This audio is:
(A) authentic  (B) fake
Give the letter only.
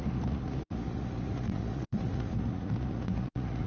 B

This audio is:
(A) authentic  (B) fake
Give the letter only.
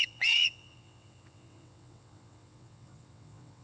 B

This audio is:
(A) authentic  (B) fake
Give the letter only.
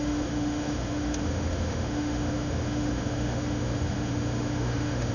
B